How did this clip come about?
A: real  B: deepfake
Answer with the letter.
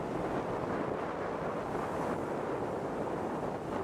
A